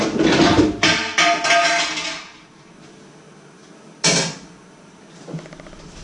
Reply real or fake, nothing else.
real